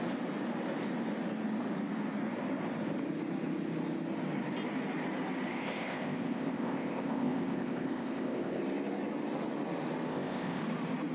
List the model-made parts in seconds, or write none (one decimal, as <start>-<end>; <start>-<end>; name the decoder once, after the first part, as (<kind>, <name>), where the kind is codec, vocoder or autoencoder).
5.5-8.6 (codec, ZipCodec); 10.1-10.6